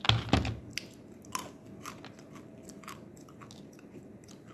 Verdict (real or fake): real